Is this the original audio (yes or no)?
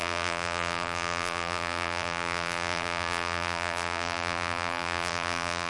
no